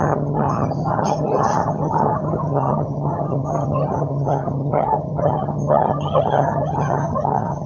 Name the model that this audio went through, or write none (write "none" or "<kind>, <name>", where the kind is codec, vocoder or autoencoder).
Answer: vocoder, HiFi-GAN